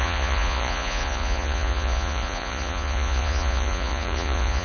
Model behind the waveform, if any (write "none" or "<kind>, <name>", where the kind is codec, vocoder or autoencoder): vocoder, Vocos